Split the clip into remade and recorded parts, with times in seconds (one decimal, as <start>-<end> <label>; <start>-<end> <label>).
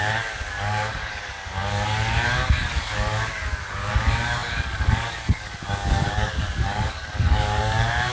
0.0-8.1 remade